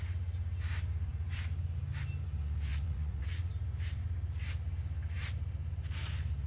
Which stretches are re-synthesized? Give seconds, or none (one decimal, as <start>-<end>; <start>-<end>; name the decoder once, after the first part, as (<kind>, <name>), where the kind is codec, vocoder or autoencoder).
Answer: 2.7-3.5 (vocoder, Vocos)